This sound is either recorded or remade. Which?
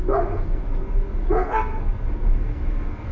remade